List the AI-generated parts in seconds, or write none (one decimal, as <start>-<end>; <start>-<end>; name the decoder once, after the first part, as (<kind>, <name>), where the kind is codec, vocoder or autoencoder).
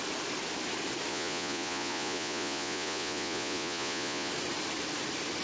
1.1-4.3 (vocoder, Vocos)